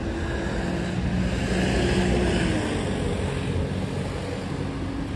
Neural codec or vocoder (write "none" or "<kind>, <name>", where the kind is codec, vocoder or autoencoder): none